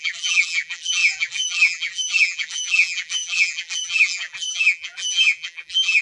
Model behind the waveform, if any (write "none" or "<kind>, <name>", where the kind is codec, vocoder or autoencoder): vocoder, BigVGAN v2